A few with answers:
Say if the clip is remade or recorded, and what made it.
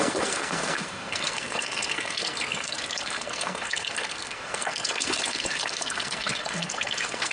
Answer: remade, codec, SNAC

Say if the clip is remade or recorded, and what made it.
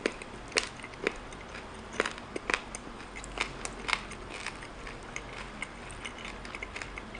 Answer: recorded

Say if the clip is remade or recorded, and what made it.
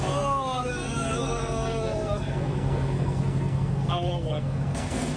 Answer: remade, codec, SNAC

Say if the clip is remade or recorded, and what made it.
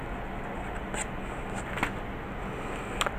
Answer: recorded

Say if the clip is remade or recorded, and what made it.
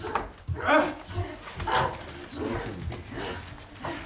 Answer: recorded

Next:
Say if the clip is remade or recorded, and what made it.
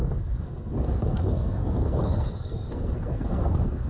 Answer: remade, codec, SNAC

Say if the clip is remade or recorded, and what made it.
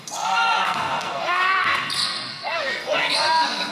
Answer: remade, codec, SNAC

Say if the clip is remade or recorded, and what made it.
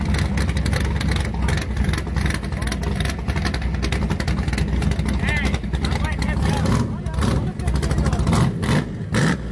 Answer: recorded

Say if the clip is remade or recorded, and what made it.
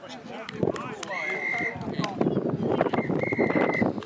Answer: recorded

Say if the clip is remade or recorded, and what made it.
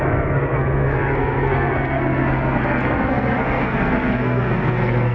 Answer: remade, codec, SNAC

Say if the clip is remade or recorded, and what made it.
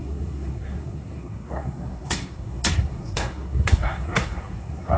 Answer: remade, codec, SNAC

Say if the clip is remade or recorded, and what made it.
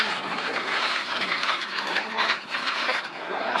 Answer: remade, codec, SNAC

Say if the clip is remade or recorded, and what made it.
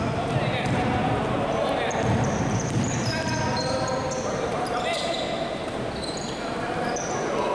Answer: recorded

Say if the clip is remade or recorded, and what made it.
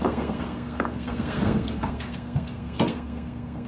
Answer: remade, codec, SNAC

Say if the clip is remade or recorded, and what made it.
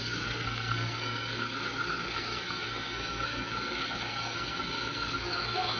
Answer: remade, codec, SNAC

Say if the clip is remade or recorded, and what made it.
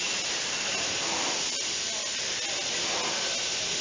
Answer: recorded